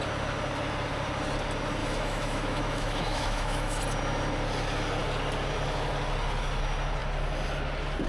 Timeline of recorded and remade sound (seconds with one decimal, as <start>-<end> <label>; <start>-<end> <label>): 0.0-1.8 recorded; 1.8-3.8 remade; 3.8-8.1 recorded